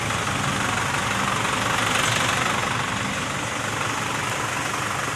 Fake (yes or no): no